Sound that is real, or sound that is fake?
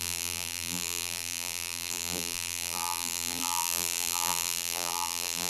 fake